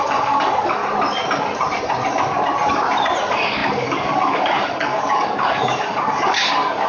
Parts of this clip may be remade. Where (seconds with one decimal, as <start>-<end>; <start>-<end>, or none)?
0.0-0.8; 3.2-6.9